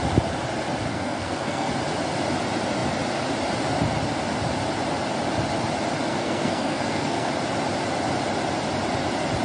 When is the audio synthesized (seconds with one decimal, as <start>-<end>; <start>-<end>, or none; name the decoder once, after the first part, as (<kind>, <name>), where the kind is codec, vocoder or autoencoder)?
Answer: 0.9-1.7 (codec, SNAC); 6.1-7.3